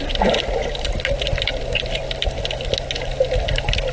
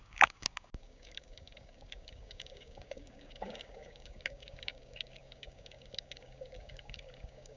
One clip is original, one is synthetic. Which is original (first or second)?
first